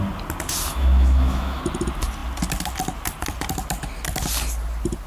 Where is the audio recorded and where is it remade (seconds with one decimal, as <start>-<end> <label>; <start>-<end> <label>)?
0.0-0.7 recorded; 0.7-1.6 remade; 1.6-5.1 recorded